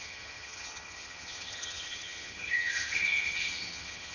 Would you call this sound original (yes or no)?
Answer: no